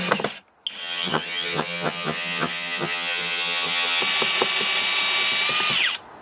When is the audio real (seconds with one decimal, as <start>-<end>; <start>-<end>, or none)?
0.0-0.8; 4.0-6.2

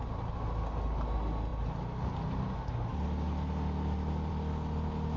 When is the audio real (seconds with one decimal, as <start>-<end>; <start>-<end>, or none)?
0.0-5.2

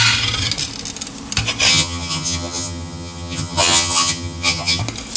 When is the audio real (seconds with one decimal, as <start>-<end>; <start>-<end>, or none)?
0.0-1.7; 4.8-5.2

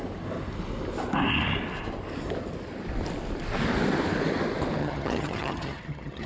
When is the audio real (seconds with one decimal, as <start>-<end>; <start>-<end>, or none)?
0.0-4.8

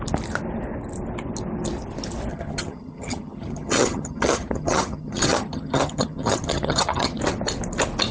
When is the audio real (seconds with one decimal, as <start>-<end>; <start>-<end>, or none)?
0.0-2.3; 7.2-8.1

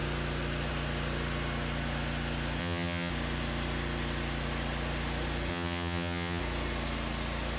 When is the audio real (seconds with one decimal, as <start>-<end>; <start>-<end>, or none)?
0.0-2.6; 3.1-5.5; 6.4-7.6

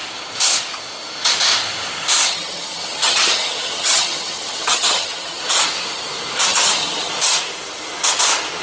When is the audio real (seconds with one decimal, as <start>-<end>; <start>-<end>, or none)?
0.0-2.2; 5.4-6.5; 7.1-8.6

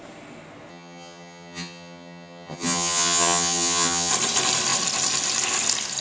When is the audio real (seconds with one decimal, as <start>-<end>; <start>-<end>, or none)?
0.0-0.7; 4.1-6.0